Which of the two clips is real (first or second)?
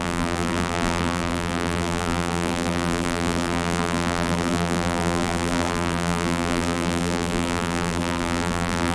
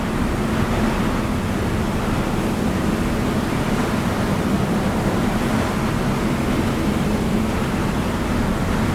second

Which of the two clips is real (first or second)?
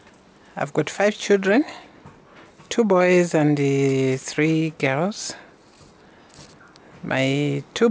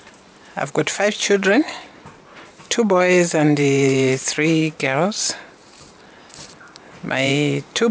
first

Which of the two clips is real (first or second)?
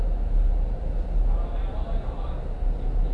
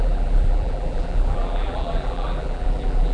first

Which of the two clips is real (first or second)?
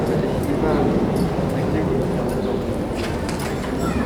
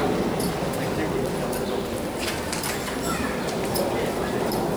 first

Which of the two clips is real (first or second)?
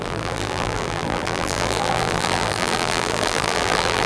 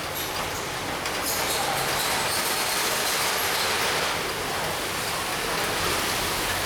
second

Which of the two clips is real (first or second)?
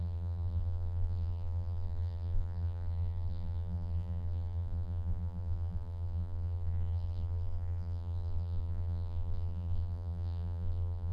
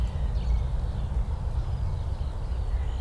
second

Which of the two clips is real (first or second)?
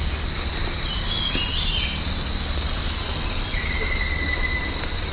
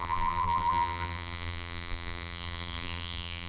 first